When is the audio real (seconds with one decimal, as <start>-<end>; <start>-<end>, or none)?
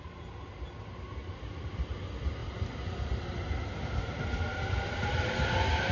0.0-5.9